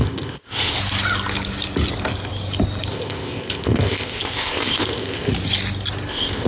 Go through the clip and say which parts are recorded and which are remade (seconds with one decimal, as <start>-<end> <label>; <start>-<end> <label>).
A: 0.0-0.8 remade; 0.8-2.9 recorded; 2.9-5.3 remade; 5.3-6.1 recorded; 6.1-6.5 remade